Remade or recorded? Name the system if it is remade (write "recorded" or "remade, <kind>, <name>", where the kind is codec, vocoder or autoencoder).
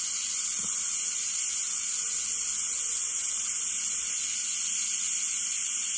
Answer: recorded